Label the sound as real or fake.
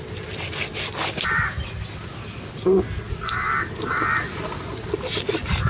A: real